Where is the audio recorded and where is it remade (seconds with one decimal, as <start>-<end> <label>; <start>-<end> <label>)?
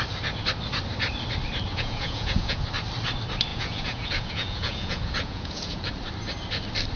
0.0-1.7 recorded; 1.7-2.6 remade; 2.6-3.5 recorded; 3.5-5.9 remade; 5.9-7.0 recorded